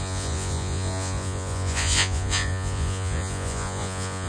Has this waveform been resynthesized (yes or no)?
yes